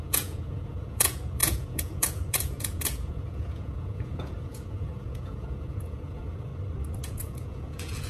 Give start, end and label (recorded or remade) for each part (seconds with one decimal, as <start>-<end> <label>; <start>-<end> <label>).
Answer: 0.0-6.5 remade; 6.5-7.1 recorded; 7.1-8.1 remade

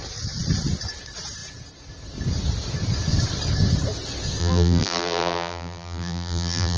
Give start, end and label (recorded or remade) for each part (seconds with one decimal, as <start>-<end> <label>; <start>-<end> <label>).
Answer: 0.0-4.4 recorded; 4.4-6.8 remade

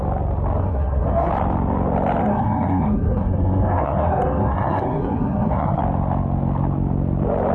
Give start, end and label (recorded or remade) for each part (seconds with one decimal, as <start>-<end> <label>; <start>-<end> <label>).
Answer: 0.0-0.6 recorded; 0.6-1.3 remade; 1.3-2.2 recorded; 2.2-5.8 remade; 5.8-7.5 recorded